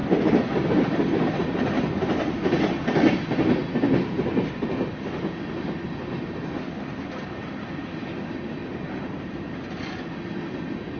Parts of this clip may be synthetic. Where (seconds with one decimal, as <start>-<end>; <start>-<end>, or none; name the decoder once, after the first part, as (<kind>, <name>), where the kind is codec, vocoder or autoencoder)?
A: none